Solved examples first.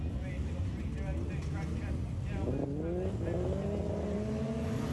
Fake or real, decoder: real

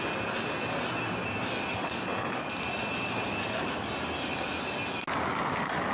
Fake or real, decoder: real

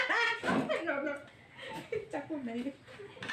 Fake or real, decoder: real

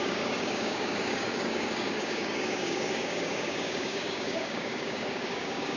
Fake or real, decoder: fake, codec, DAC